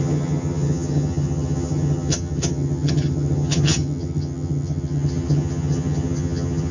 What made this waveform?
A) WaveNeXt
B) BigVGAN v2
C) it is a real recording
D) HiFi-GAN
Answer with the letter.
D